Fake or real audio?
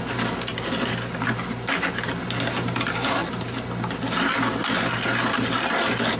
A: real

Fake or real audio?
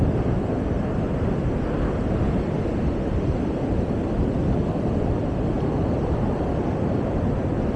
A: real